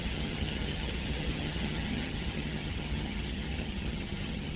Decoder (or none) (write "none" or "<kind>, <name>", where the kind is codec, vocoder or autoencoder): vocoder, HiFi-GAN